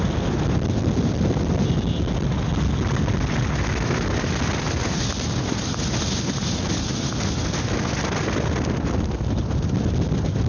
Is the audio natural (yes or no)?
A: yes